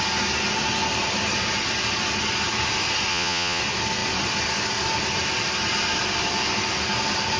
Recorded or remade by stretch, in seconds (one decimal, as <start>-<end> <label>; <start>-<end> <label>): 0.0-3.1 recorded; 3.1-3.6 remade; 3.6-7.4 recorded